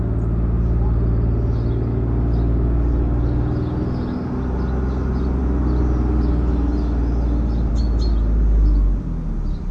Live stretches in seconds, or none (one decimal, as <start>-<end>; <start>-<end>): 0.0-9.7